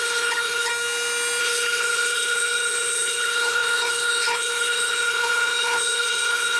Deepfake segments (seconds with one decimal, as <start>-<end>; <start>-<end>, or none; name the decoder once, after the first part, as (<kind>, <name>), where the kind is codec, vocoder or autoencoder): 0.0-0.7 (codec, HILCodec); 1.4-6.6